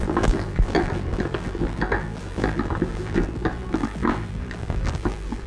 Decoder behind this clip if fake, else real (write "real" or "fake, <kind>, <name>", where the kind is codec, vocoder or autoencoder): fake, vocoder, BigVGAN v2